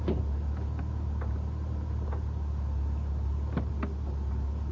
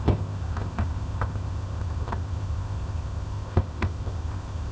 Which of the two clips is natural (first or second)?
first